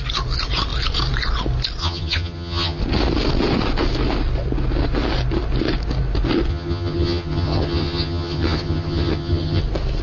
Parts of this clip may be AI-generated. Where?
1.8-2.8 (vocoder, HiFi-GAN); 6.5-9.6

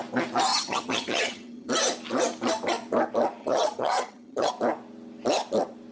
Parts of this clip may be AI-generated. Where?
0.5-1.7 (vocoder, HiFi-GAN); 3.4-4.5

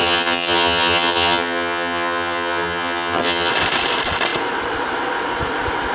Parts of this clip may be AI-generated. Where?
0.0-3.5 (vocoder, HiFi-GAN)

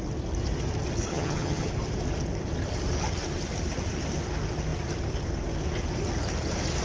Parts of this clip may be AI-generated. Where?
1.1-1.7 (vocoder, HiFi-GAN)